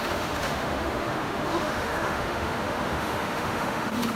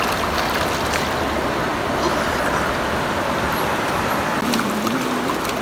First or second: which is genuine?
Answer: second